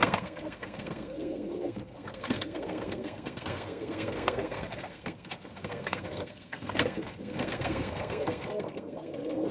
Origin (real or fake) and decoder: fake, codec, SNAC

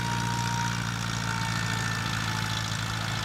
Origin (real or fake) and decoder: real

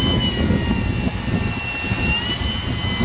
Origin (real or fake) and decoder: real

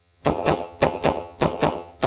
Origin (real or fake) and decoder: fake, vocoder, HiFi-GAN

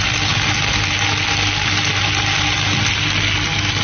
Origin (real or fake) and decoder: real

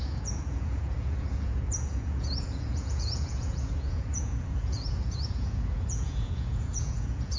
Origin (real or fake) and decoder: fake, vocoder, Vocos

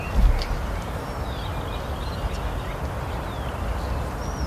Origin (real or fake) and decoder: real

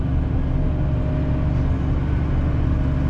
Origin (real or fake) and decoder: real